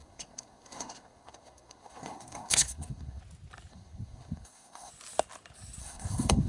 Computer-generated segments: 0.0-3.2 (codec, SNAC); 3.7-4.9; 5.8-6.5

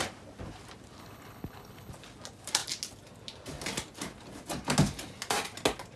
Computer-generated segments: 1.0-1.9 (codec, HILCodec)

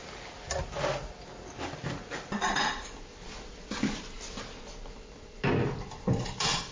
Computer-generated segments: none